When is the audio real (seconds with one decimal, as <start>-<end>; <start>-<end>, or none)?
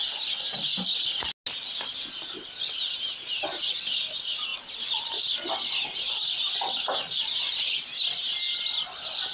0.0-9.3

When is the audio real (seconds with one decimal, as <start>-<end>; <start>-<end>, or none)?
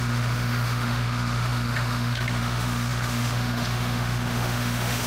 none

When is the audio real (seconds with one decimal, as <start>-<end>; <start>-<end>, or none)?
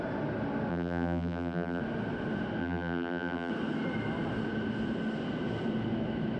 0.0-0.7; 1.8-2.6; 3.5-6.4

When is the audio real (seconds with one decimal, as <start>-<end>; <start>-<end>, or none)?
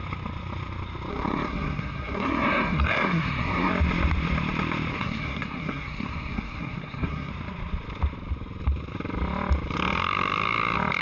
0.0-1.1; 3.7-4.9; 7.3-11.0